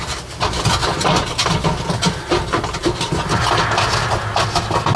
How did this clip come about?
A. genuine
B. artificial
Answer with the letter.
A